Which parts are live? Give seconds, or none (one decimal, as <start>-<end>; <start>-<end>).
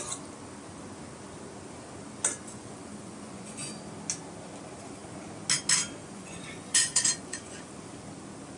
0.0-2.4; 3.8-6.0; 7.7-8.6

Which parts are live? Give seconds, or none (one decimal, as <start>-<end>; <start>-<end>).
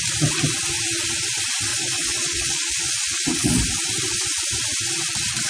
0.0-1.7; 3.6-5.5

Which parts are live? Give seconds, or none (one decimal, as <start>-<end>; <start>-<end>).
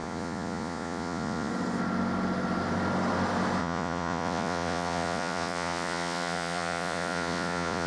1.5-3.6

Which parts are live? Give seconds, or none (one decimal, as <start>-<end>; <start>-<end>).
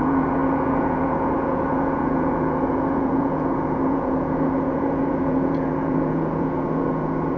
none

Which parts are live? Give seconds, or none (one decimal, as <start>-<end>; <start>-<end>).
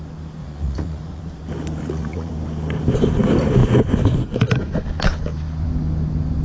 0.0-0.4; 1.2-1.8; 2.3-6.4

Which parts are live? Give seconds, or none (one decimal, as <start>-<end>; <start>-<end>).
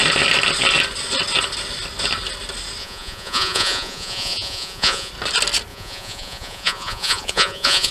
0.0-2.8; 5.1-5.7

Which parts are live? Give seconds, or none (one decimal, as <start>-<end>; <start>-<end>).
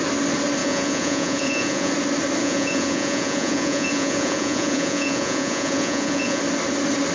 0.0-0.6; 1.9-2.4; 6.4-7.1